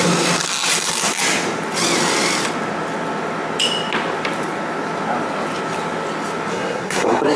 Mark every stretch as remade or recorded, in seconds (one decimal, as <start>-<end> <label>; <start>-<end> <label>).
0.0-6.5 recorded; 6.5-7.4 remade